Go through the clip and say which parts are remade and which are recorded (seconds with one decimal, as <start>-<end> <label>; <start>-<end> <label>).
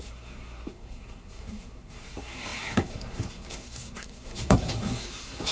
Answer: 0.0-5.5 remade